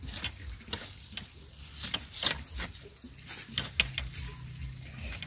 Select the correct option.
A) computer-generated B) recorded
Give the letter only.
B